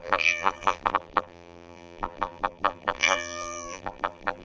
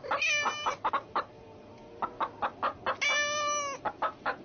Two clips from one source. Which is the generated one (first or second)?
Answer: first